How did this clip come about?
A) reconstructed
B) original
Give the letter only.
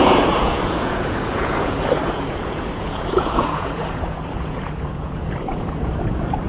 A